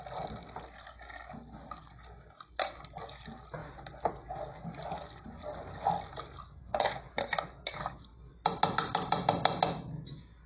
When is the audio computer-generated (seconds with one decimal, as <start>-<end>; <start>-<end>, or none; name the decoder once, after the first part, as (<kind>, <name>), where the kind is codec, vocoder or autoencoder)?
none